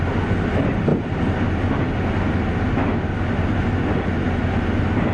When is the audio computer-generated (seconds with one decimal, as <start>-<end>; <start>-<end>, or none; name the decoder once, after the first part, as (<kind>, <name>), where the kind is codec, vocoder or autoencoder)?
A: none